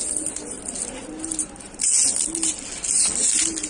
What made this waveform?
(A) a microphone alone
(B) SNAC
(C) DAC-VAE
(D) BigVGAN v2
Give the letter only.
A